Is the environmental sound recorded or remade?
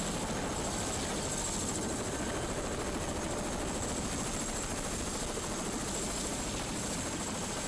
recorded